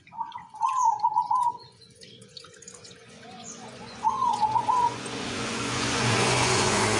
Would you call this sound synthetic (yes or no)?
yes